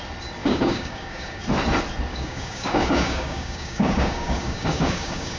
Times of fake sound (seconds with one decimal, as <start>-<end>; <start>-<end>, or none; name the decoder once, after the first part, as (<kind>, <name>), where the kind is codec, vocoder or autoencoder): 0.4-1.4 (codec, DAC); 2.1-5.4